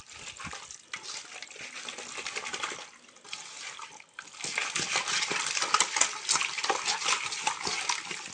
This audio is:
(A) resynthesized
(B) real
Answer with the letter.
B